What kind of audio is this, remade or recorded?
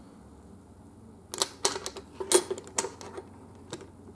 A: recorded